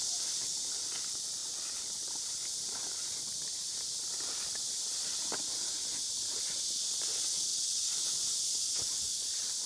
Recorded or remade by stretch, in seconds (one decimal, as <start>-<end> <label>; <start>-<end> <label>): 0.0-9.7 recorded